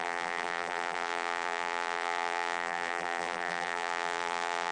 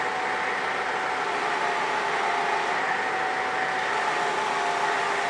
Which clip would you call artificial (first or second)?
first